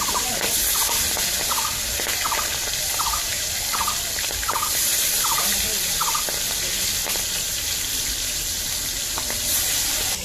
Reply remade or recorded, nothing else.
recorded